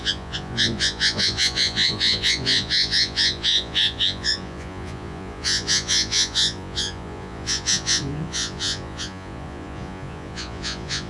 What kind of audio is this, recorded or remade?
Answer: remade